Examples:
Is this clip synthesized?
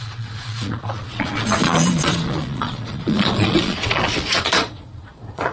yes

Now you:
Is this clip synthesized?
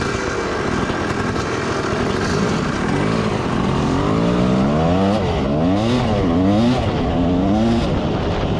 no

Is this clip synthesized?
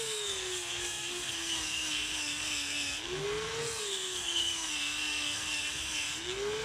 yes